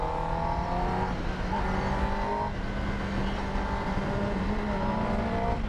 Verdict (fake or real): real